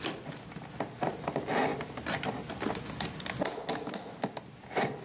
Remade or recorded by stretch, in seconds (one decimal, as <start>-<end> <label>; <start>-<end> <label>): 0.0-5.0 recorded

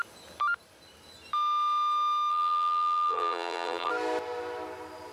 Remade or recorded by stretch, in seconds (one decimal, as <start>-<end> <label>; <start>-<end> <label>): 0.0-2.3 recorded; 2.3-3.9 remade; 3.9-5.1 recorded

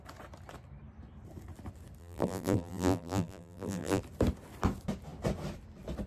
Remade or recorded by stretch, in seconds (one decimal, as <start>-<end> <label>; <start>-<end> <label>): 0.0-2.0 recorded; 2.0-4.0 remade; 4.0-6.1 recorded

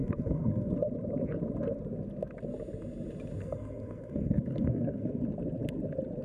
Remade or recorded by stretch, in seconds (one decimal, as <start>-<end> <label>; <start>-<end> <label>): 0.0-0.7 remade; 0.7-3.4 recorded; 3.4-5.2 remade; 5.2-6.2 recorded